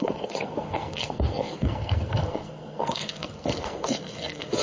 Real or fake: fake